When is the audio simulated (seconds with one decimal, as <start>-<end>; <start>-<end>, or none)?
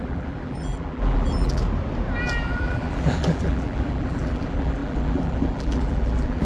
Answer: 0.0-1.6; 2.2-6.4